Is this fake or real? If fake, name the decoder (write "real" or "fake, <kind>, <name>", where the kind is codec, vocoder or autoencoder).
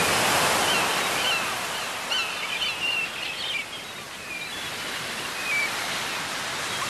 real